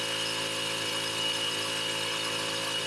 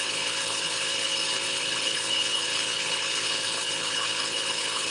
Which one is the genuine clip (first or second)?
first